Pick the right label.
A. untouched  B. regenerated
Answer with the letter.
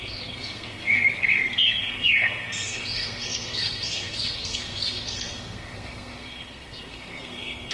B